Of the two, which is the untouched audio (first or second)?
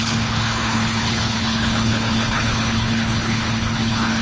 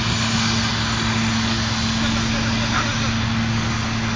second